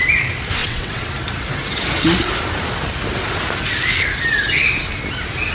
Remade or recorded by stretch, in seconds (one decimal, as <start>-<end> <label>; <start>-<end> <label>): 0.0-0.6 recorded; 0.6-1.1 remade; 1.1-5.5 recorded